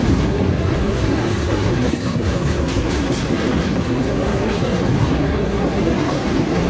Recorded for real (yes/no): no